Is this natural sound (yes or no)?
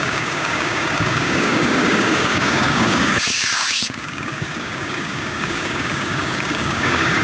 no